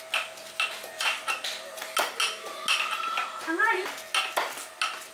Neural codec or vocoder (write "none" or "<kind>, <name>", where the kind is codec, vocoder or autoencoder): none